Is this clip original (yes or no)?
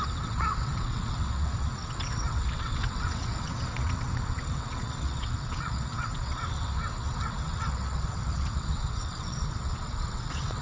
no